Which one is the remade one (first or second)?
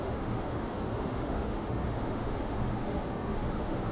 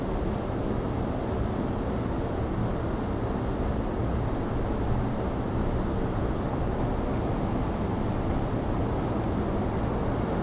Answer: first